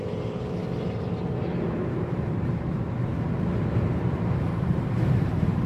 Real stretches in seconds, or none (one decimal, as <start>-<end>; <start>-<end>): 0.6-1.8